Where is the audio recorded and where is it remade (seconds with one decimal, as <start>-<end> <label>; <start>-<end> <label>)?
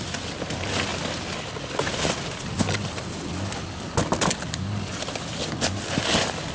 0.0-6.5 recorded